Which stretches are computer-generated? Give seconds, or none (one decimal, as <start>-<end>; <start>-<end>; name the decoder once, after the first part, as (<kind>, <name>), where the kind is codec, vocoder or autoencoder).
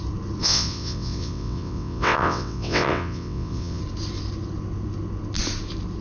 0.4-3.8 (vocoder, WaveNeXt)